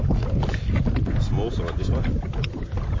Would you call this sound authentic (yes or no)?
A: yes